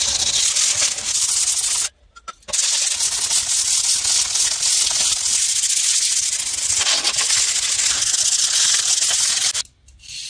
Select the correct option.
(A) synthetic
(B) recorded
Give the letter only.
B